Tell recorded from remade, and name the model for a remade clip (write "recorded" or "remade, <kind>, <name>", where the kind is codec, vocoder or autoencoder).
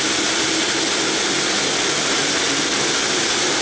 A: recorded